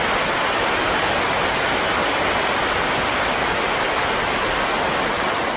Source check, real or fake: real